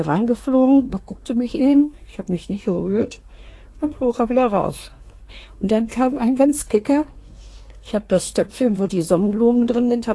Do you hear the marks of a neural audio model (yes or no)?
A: yes